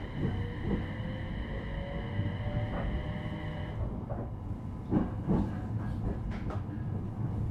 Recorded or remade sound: recorded